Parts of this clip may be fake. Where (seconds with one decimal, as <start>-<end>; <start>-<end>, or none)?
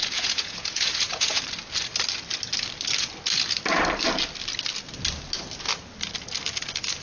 0.0-1.4